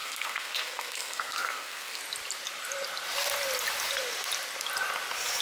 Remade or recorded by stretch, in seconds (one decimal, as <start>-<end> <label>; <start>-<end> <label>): 0.0-2.0 remade; 2.0-5.4 recorded

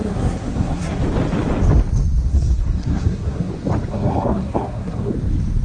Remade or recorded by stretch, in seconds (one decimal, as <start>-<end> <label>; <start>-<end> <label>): 0.0-1.0 remade; 1.0-2.3 recorded; 2.3-3.5 remade; 3.5-3.9 recorded; 3.9-5.1 remade; 5.1-5.6 recorded

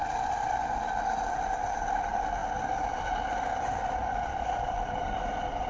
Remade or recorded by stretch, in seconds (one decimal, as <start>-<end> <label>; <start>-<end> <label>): 0.0-5.7 recorded

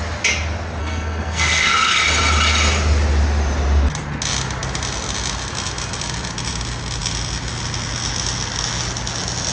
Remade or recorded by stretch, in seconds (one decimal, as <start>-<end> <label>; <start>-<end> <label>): 0.0-0.8 recorded; 0.8-2.0 remade; 2.0-9.5 recorded

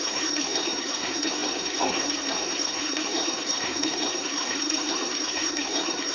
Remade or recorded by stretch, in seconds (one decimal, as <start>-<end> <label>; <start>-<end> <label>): 0.0-6.1 remade

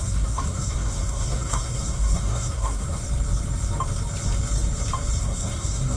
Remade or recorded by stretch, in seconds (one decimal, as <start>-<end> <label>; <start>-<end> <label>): 0.0-3.0 remade; 3.0-5.2 recorded; 5.2-6.0 remade

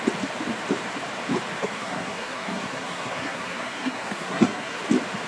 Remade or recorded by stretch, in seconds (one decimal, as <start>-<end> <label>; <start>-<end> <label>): 0.0-1.6 recorded; 1.6-4.8 remade; 4.8-5.3 recorded

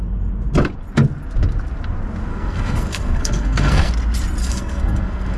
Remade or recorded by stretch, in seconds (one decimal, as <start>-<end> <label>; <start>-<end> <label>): 0.0-2.3 recorded; 2.3-3.9 remade; 3.9-4.4 recorded; 4.4-5.4 remade